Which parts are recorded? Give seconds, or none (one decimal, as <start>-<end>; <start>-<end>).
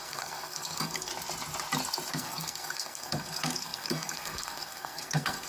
1.1-2.1